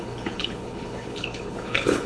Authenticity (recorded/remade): remade